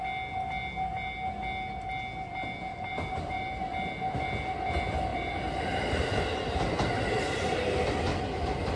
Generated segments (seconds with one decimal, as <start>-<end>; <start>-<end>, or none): 2.7-3.6; 5.1-5.7; 8.1-8.8